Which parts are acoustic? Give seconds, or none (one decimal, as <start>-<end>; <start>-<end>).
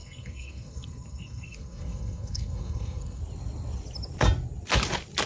3.2-5.3